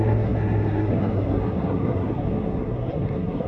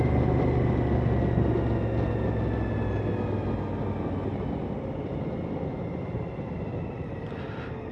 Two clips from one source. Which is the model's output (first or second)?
first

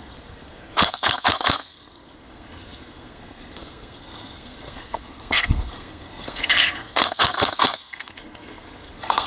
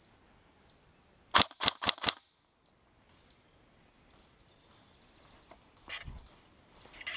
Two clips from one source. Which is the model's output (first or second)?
first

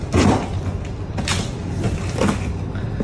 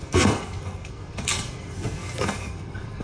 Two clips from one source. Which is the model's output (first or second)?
second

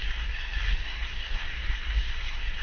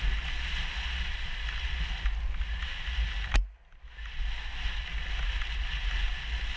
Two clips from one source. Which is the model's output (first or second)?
first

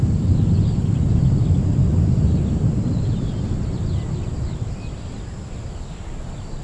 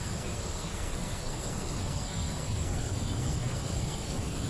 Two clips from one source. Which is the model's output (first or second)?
second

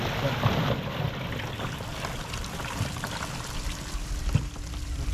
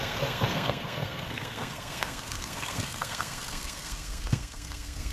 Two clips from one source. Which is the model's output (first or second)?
second